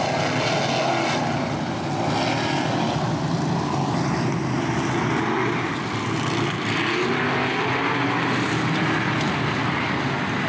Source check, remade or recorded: recorded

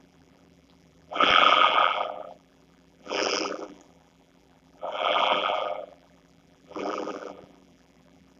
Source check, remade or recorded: remade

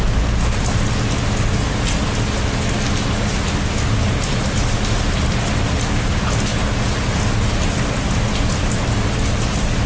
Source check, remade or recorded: recorded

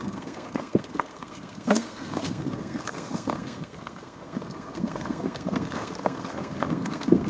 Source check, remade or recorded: remade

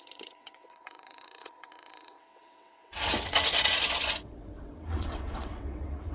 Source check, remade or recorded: remade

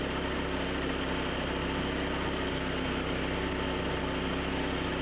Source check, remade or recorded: recorded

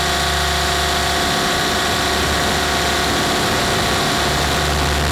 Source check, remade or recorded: recorded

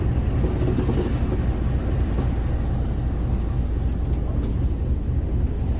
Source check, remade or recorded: recorded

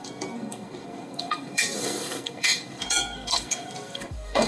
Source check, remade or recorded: remade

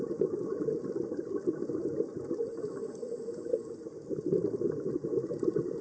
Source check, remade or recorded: recorded